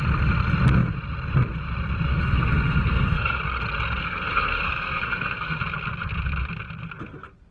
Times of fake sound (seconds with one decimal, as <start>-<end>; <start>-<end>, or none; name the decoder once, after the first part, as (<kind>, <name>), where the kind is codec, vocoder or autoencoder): 2.1-3.4 (codec, SNAC); 4.0-5.6